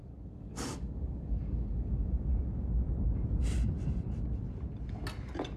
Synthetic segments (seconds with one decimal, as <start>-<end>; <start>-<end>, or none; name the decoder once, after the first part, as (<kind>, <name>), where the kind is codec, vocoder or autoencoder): 0.0-2.9 (codec, DAC)